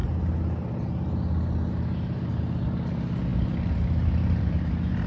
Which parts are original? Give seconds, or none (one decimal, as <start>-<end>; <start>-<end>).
0.0-5.1